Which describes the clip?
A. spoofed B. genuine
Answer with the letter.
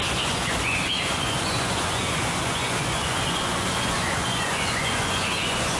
A